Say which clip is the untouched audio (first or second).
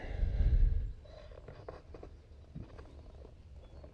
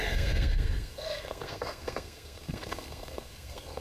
first